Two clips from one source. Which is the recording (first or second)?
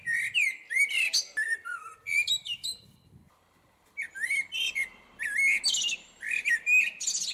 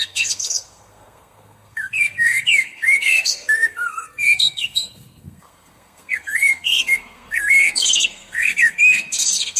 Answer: first